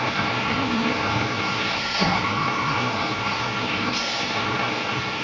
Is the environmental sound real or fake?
fake